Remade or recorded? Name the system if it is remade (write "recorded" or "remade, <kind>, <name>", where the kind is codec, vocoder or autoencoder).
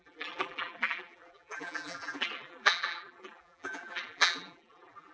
remade, vocoder, BigVGAN v2